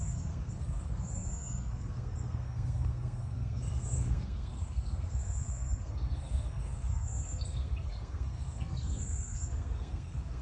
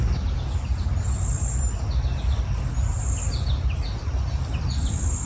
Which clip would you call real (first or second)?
second